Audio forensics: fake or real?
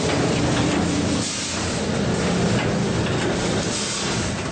real